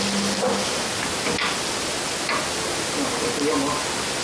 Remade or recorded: recorded